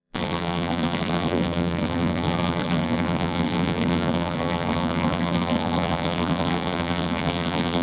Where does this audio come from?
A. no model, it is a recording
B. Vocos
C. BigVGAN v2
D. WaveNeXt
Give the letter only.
C